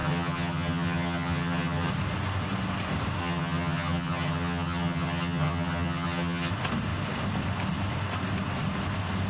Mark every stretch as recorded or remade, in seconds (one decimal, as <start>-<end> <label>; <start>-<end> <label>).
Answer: 0.0-1.9 remade; 1.9-3.2 recorded; 3.2-6.5 remade; 6.5-9.3 recorded